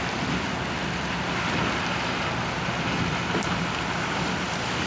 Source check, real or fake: real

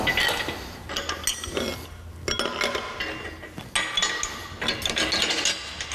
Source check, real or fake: real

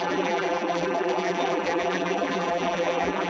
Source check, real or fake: fake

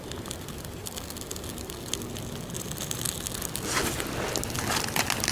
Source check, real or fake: real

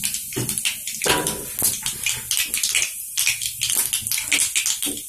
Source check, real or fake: real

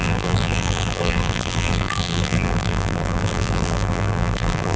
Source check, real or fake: fake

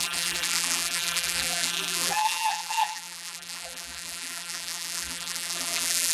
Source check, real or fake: fake